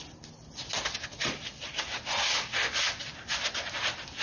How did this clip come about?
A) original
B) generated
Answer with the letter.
A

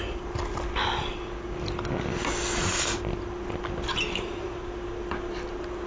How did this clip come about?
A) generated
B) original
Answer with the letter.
B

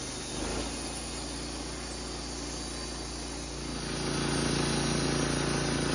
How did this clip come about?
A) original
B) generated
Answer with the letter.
A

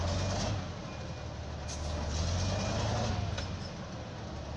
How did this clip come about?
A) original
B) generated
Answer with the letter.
A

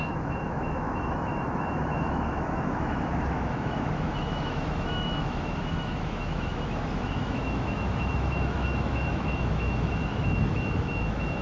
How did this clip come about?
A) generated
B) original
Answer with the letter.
A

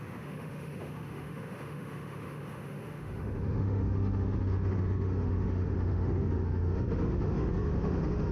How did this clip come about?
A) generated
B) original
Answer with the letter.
A